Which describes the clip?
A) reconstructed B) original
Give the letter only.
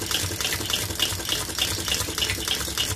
B